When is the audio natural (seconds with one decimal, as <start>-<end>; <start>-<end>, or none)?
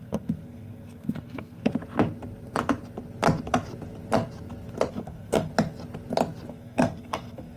1.7-4.9; 5.5-6.5